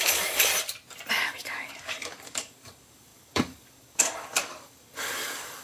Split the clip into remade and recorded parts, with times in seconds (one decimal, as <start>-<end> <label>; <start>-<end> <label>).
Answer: 0.0-0.5 remade; 0.5-1.1 recorded; 1.1-5.6 remade